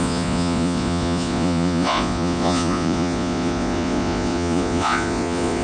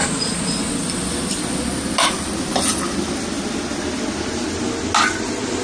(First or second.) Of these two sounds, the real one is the second